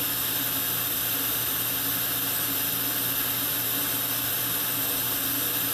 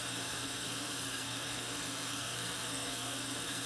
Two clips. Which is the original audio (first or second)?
first